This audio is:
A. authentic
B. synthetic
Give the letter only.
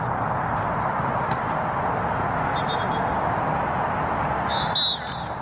A